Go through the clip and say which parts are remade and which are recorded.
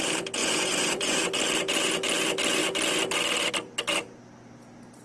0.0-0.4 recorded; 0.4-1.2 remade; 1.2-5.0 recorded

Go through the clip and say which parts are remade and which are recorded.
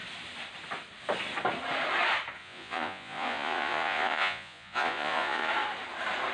0.0-2.4 recorded; 2.4-5.5 remade; 5.5-6.3 recorded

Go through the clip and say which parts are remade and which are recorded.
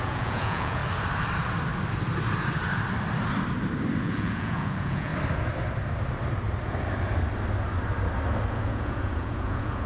0.0-0.8 remade; 0.8-4.0 recorded; 4.0-5.1 remade; 5.1-8.6 recorded; 8.6-9.9 remade